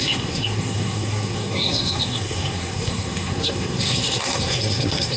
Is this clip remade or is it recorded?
remade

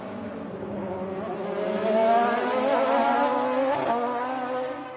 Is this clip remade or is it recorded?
recorded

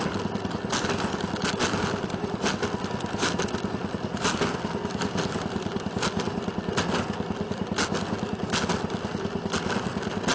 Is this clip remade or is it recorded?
recorded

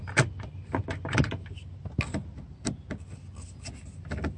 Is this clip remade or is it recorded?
recorded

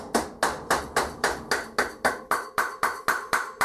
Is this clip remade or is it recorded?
recorded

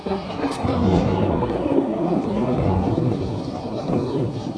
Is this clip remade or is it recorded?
remade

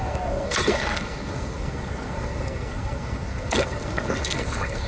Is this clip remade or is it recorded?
remade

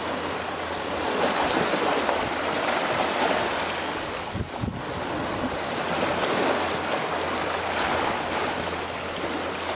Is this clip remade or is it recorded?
recorded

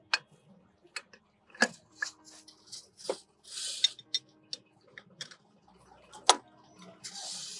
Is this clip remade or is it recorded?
recorded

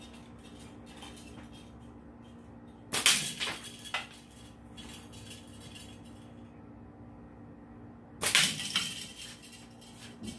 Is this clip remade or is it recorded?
recorded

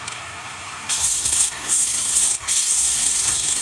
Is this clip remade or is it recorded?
remade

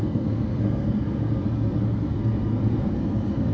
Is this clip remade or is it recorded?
remade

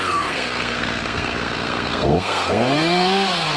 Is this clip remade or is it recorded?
remade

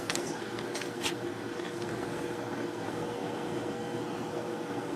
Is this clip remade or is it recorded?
remade